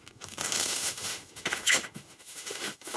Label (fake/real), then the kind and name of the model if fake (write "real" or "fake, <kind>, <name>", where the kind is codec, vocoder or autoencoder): fake, autoencoder, DAC-VAE